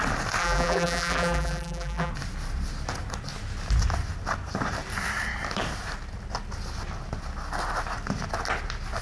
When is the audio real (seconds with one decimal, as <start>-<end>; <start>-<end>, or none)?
0.0-0.4; 2.1-9.0